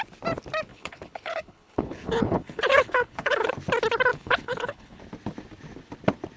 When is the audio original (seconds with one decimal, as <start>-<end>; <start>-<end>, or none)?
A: 0.0-0.7; 3.5-4.1; 5.0-6.4

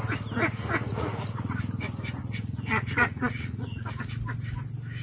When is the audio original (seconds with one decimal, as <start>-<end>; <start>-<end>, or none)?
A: 0.0-0.9; 1.6-2.2; 4.1-5.0

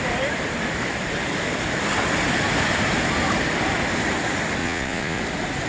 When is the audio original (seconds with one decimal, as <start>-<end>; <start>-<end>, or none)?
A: 0.0-4.6; 5.2-5.7